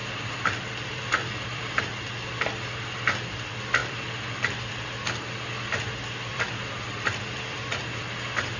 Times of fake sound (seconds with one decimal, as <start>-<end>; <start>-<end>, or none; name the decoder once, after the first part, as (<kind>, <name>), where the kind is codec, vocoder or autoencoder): 0.0-1.8 (vocoder, BigVGAN v2); 3.8-4.7; 6.3-8.0